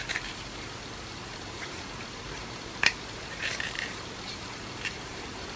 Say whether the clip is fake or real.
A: fake